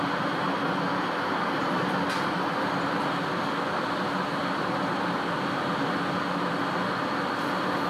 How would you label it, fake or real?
real